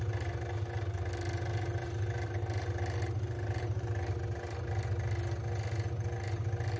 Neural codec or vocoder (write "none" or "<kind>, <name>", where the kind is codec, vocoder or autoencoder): none